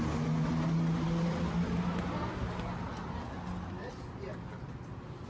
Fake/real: real